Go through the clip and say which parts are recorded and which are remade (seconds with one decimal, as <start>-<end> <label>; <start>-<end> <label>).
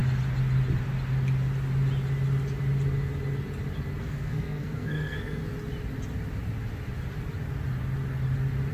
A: 0.0-4.0 recorded; 4.0-5.4 remade; 5.4-8.7 recorded